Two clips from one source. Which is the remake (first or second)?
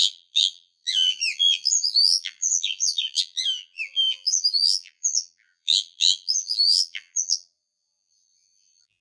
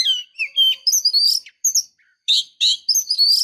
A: first